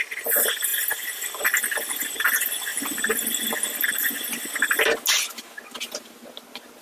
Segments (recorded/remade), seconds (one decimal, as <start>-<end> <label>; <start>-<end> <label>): 0.0-6.8 recorded